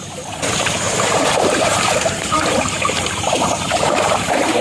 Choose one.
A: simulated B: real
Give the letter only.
A